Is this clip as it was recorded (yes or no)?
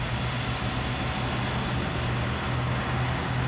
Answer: yes